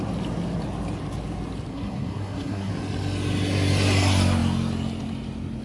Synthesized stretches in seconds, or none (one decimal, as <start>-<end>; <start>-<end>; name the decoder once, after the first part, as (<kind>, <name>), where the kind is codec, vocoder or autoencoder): 1.7-2.7 (codec, SNAC)